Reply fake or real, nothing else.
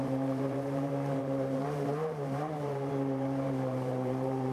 fake